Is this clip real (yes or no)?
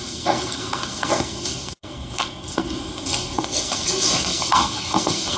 no